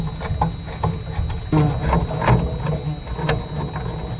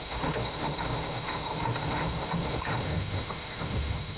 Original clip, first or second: first